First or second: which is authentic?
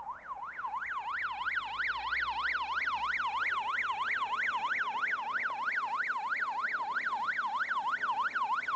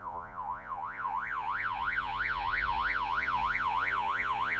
first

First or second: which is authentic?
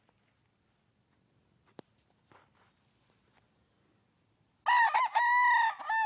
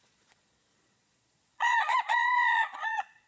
first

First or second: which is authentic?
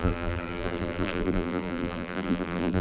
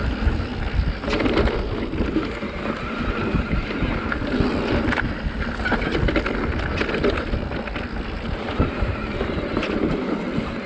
second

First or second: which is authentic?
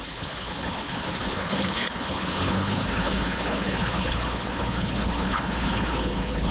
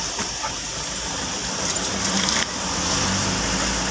second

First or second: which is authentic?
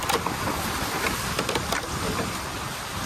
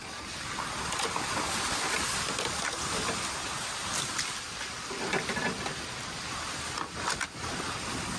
second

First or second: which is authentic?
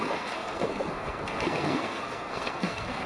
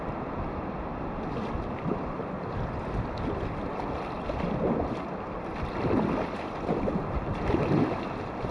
second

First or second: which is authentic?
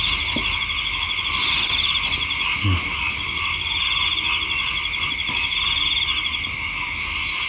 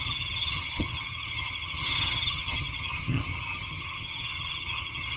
first